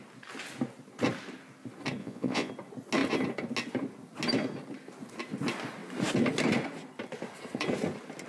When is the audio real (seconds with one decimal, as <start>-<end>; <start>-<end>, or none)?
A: 0.0-2.0; 2.5-8.3